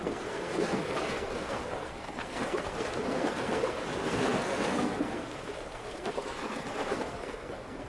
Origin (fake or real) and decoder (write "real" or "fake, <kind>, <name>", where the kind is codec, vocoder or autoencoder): fake, codec, SNAC